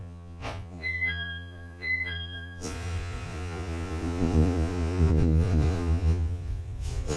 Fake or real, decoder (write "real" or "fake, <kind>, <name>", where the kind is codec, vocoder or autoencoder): fake, vocoder, Vocos